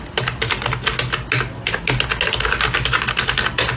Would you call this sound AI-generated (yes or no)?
no